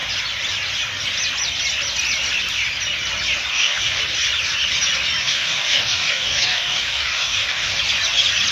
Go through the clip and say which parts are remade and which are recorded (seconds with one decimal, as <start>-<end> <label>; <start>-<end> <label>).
0.0-3.5 recorded; 3.5-4.0 remade; 4.0-5.2 recorded; 5.2-7.8 remade; 7.8-8.5 recorded